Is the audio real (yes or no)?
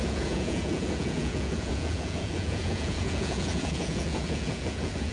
no